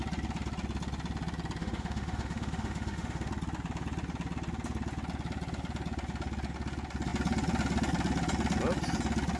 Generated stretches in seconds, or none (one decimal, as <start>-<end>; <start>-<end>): 1.6-3.3